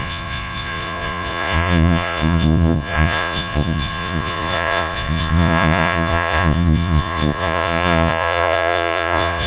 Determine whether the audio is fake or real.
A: fake